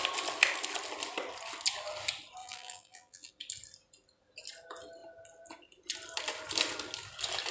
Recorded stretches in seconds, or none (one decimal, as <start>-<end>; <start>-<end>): 0.0-2.4; 3.3-7.5